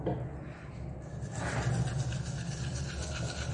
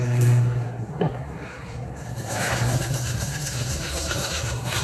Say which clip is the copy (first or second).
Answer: second